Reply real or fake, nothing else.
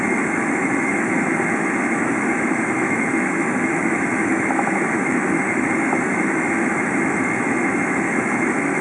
fake